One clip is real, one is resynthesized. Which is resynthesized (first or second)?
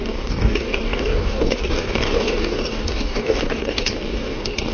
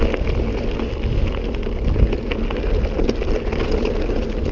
first